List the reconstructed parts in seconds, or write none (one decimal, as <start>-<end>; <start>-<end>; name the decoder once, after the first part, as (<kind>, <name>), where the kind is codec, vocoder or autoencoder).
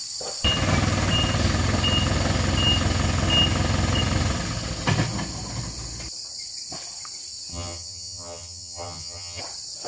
7.5-9.4 (vocoder, HiFi-GAN)